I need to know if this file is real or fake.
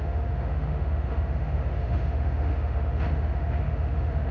fake